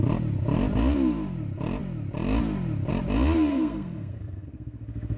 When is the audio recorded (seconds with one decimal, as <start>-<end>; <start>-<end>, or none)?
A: 0.0-3.5

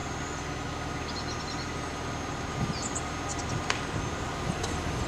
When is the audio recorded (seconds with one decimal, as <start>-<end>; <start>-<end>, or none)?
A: 0.0-5.1

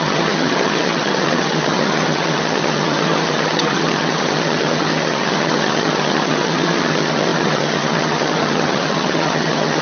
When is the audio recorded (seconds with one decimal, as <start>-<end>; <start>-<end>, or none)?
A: none

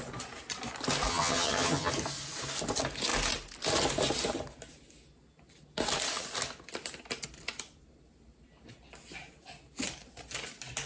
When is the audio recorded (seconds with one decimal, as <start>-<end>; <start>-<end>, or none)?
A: 0.0-1.1; 1.9-10.9

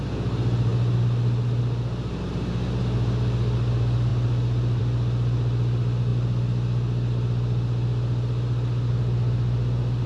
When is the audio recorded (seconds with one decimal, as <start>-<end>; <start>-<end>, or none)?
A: 0.0-10.1

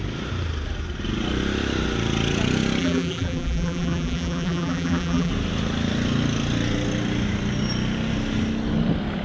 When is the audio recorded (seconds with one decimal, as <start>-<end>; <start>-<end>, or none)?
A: 0.0-2.8; 5.3-9.2

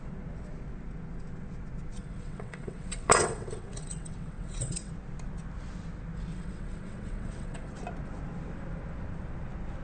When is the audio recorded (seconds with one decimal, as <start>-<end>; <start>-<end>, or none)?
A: 0.0-2.0; 4.9-6.3; 7.7-9.8

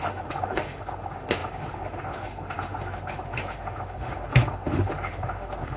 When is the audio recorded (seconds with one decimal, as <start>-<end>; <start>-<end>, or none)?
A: none